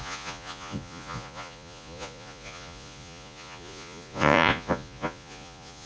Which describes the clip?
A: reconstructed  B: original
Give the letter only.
A